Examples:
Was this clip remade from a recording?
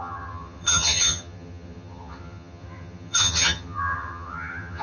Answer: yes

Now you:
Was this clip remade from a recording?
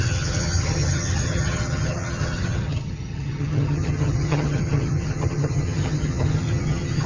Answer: yes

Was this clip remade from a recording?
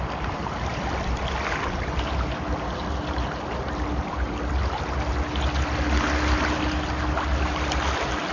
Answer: no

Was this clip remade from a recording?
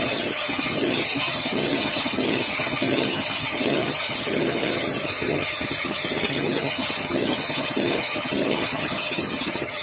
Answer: yes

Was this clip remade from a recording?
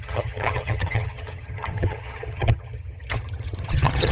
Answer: yes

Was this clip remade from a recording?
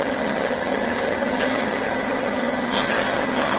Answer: yes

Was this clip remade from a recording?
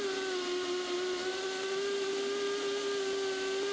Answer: no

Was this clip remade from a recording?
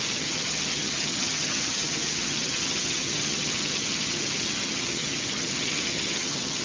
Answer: yes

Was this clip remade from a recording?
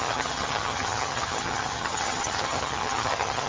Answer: yes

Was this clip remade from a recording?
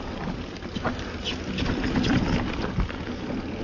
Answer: no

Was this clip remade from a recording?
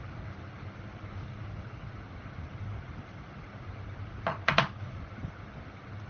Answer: no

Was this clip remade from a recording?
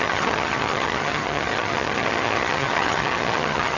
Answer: yes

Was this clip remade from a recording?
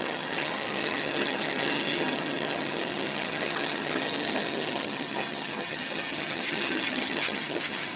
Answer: yes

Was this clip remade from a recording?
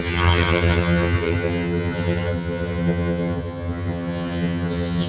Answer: yes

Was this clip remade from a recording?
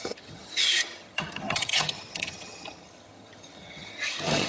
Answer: yes